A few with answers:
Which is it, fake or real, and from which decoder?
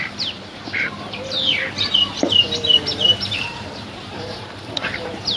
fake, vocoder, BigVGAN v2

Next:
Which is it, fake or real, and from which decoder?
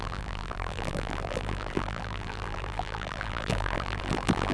fake, vocoder, BigVGAN v2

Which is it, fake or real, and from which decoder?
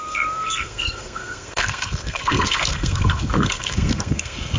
fake, codec, SNAC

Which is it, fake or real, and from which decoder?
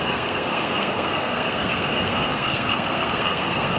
fake, codec, SNAC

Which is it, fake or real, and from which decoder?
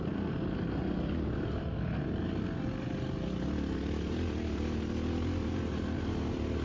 real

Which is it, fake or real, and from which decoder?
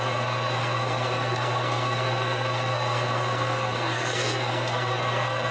fake, codec, SNAC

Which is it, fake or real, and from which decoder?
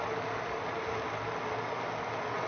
real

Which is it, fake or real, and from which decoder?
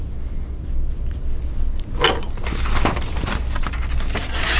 real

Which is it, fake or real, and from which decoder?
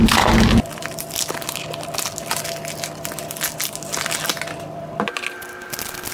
real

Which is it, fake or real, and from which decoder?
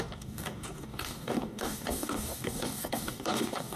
fake, codec, DAC